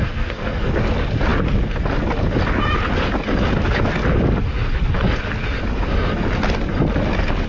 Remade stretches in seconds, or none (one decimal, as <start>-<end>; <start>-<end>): 0.0-0.7